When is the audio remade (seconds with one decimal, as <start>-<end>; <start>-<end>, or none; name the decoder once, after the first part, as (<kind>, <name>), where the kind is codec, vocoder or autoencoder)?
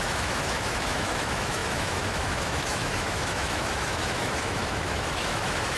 0.0-5.8 (autoencoder, DAC-VAE)